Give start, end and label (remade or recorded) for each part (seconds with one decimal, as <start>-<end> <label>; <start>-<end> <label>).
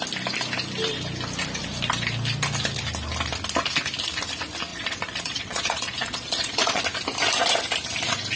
0.0-4.7 recorded; 4.7-6.8 remade; 6.8-8.4 recorded